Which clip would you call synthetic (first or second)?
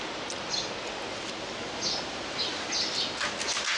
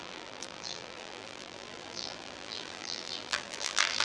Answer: second